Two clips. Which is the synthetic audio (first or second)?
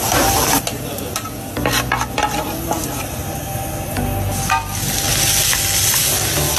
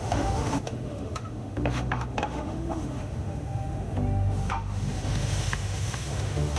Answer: second